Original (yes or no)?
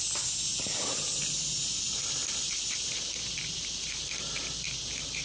yes